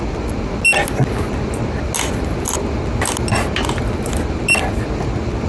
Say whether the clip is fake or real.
real